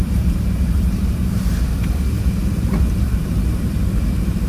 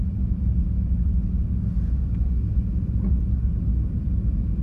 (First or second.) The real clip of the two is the second